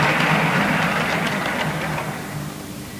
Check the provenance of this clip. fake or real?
real